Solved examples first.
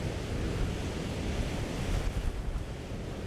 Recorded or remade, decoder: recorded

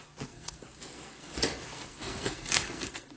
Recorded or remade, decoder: remade, codec, SNAC